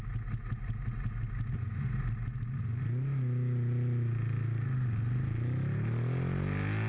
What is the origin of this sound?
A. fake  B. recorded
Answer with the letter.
B